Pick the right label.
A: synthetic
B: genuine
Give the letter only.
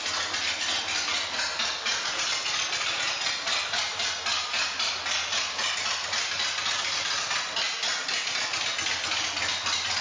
B